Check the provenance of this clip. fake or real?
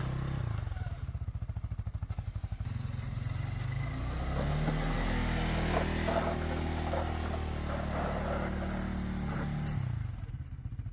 real